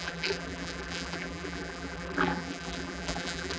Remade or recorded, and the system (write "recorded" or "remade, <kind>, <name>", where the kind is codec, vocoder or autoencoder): remade, vocoder, BigVGAN v2